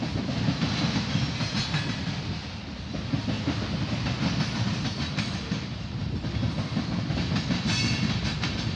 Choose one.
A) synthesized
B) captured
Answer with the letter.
B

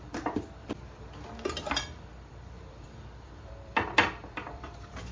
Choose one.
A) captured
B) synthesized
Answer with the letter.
B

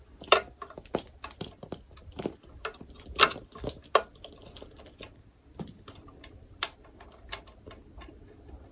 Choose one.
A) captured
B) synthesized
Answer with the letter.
A